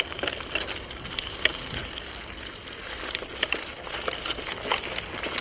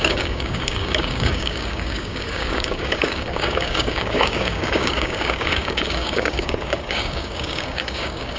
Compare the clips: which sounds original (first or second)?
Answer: first